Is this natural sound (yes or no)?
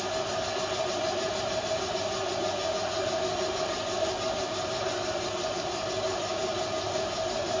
yes